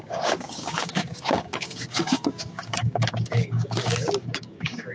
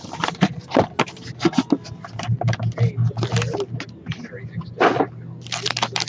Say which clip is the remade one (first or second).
first